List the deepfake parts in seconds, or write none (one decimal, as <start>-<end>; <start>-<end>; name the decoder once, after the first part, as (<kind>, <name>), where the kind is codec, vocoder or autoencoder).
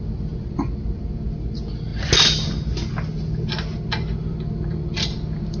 none